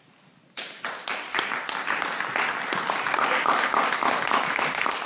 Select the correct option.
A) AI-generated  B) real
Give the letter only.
B